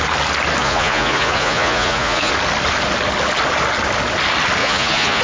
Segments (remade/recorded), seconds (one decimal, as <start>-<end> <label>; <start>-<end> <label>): 0.0-0.6 recorded; 0.6-2.3 remade; 2.3-4.6 recorded; 4.6-5.2 remade